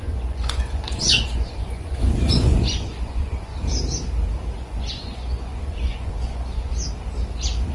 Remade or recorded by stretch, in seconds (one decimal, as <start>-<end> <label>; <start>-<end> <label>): 0.0-3.5 remade; 3.5-4.6 recorded; 4.6-6.7 remade; 6.7-7.7 recorded